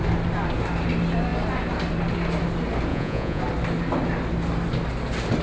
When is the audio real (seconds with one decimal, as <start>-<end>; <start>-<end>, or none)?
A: 0.0-2.9; 3.4-5.4